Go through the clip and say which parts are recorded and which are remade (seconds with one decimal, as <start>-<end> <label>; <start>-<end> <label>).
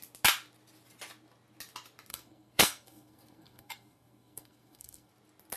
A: 0.0-2.1 recorded; 2.1-5.1 remade; 5.1-5.6 recorded